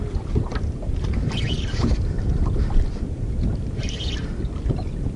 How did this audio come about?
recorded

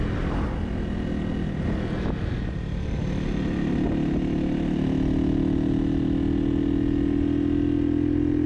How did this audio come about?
recorded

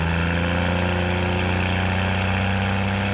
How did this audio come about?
recorded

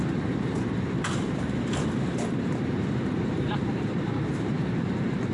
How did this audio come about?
remade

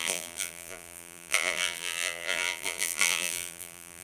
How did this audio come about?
remade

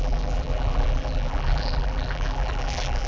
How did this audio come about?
remade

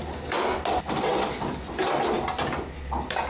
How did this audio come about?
recorded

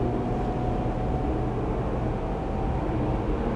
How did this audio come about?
recorded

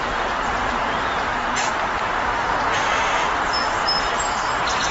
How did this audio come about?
recorded